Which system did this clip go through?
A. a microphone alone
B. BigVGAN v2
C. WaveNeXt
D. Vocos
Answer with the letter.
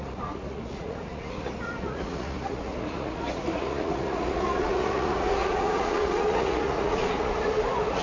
D